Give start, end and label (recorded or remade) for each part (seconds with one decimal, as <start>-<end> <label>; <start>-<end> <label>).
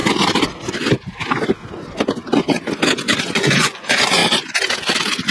0.0-3.2 recorded; 3.2-4.2 remade; 4.2-5.3 recorded